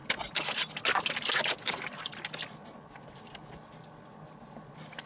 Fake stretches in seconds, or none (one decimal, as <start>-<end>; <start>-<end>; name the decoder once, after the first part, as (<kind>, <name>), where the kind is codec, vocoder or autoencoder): none

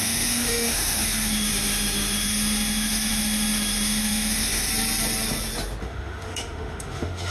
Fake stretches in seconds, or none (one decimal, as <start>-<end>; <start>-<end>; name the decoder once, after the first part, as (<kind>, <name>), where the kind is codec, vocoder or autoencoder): 0.0-4.7 (autoencoder, DAC-VAE); 5.8-7.3

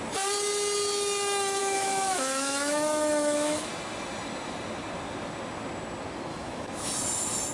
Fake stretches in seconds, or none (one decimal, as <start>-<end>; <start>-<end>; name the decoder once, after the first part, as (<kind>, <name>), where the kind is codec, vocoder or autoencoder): 1.6-3.7 (autoencoder, DAC-VAE); 6.3-6.9

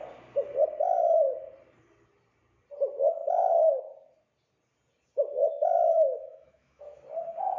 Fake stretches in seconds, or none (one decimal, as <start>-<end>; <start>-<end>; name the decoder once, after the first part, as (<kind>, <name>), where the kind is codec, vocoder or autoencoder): 5.4-7.0 (autoencoder, DAC-VAE)